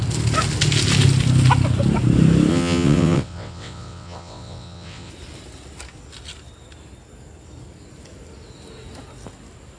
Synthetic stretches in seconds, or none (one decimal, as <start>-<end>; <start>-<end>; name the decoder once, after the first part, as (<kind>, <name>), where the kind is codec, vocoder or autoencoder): 2.5-5.1 (vocoder, WaveNeXt)